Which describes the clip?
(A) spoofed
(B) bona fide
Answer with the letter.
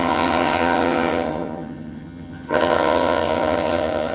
A